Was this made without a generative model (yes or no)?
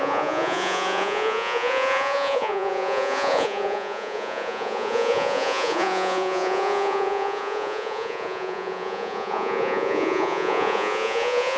no